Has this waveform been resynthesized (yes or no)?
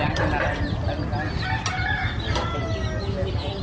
no